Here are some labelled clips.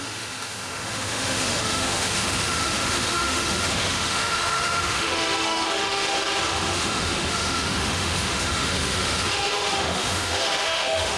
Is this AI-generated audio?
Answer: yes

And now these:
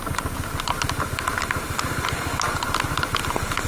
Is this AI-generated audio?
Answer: no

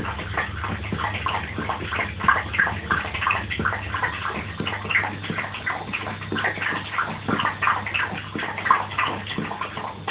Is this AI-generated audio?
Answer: no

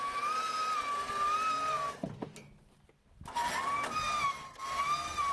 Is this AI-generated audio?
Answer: no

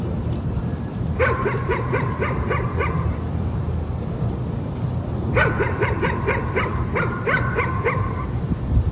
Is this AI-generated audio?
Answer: yes